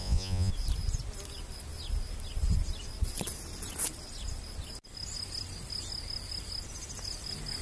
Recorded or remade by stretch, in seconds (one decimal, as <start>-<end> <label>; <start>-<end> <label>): 0.0-0.5 remade; 0.5-7.6 recorded

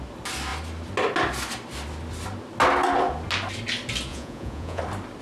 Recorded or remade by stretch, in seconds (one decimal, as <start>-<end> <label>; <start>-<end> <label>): 0.0-4.1 recorded; 4.1-4.8 remade; 4.8-5.2 recorded

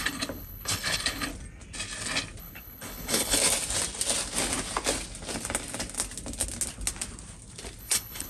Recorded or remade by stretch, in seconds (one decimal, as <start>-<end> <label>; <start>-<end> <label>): 0.0-1.3 remade; 1.3-2.4 recorded; 2.4-3.4 remade; 3.4-7.8 recorded; 7.8-8.3 remade

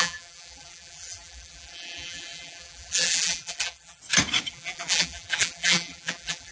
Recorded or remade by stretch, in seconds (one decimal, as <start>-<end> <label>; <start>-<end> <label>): 0.0-4.0 remade; 4.0-4.5 recorded; 4.5-6.5 remade

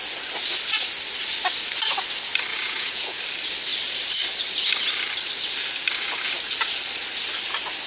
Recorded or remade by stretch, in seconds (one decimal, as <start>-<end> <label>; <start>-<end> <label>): 0.0-2.5 recorded; 2.5-3.2 remade; 3.2-7.9 recorded

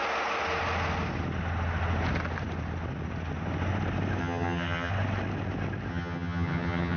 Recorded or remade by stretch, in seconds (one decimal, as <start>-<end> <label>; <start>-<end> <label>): 0.0-4.2 recorded; 4.2-4.9 remade; 4.9-5.9 recorded; 5.9-7.0 remade

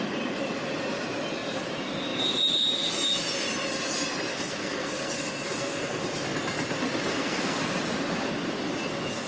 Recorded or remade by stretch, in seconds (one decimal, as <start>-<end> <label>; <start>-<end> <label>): 0.0-4.3 recorded; 4.3-6.0 remade; 6.0-7.1 recorded; 7.1-7.6 remade; 7.6-9.3 recorded